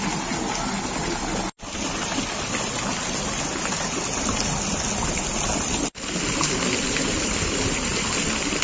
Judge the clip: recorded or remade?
recorded